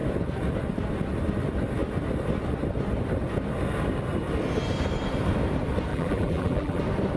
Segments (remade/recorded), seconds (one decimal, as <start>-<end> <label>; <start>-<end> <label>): 0.0-5.9 recorded; 5.9-6.8 remade; 6.8-7.2 recorded